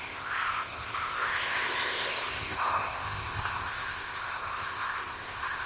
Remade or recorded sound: remade